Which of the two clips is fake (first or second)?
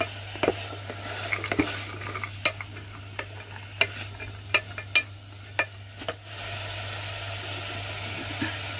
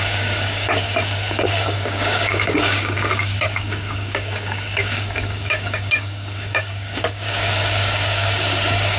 second